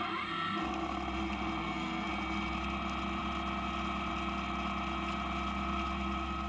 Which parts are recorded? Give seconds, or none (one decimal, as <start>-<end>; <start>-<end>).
0.0-1.6; 2.1-6.5